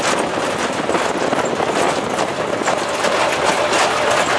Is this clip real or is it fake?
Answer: real